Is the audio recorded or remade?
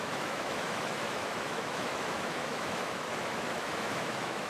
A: remade